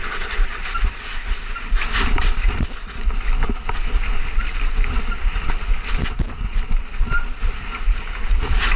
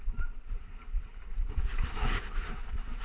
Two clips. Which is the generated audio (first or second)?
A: second